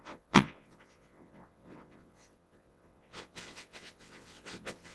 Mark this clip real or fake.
fake